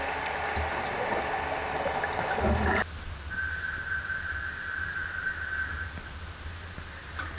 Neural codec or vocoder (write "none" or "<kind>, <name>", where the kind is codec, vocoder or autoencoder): none